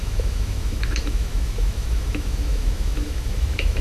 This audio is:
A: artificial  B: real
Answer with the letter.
A